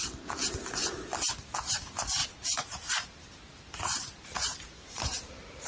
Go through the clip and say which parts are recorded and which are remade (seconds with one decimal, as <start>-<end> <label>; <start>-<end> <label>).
0.0-2.2 recorded; 2.2-5.7 remade